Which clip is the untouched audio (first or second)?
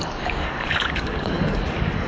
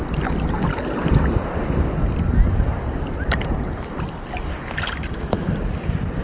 second